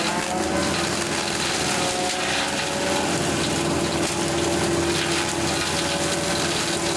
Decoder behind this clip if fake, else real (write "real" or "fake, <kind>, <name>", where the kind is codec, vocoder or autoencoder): real